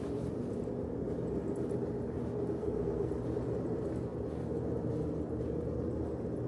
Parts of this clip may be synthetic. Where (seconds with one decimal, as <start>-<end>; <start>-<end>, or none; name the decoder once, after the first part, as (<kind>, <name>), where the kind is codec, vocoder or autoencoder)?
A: 2.6-3.1 (codec, SNAC)